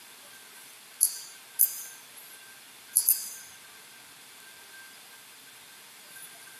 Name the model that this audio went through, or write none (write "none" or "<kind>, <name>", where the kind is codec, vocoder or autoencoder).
none